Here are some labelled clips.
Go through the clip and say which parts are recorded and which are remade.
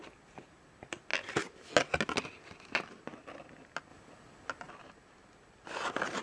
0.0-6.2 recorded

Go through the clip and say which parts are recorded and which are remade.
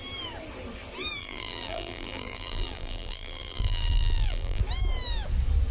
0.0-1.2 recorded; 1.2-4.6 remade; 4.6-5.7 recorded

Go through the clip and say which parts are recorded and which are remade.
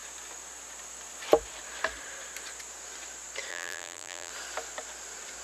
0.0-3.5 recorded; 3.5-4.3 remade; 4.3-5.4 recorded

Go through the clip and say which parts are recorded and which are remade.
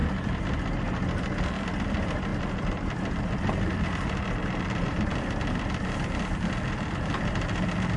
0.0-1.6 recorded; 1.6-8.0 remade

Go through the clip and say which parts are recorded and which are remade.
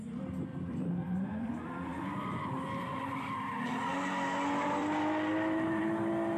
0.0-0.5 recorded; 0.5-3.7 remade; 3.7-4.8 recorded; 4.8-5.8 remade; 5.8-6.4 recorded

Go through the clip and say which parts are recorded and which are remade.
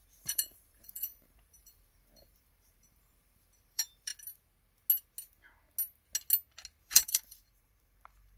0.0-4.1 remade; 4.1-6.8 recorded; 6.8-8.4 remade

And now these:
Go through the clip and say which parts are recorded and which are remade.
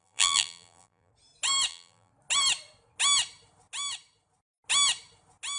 0.0-1.1 remade; 1.1-1.7 recorded; 1.7-2.1 remade; 2.1-5.6 recorded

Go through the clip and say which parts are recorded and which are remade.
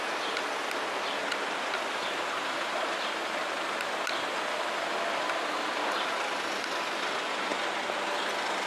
0.0-3.2 recorded; 3.2-4.7 remade; 4.7-7.5 recorded; 7.5-8.7 remade